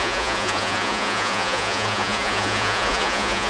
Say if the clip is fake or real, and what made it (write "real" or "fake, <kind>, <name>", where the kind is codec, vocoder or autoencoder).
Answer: fake, vocoder, Vocos